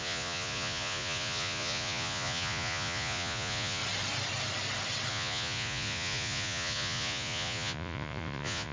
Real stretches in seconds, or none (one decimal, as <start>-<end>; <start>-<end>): 3.8-5.1

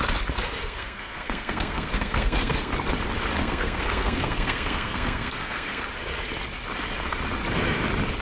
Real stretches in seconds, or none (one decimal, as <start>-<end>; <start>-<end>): 0.0-0.6; 2.7-3.4; 5.8-8.2

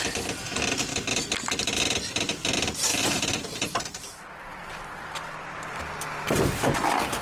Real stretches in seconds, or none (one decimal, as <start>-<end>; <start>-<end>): 0.0-2.9; 5.8-7.2